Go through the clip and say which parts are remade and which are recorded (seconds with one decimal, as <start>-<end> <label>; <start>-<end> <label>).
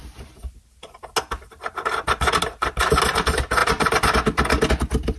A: 0.0-5.2 recorded